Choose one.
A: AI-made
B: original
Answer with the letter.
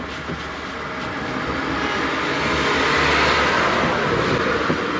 B